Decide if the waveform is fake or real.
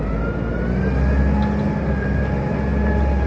real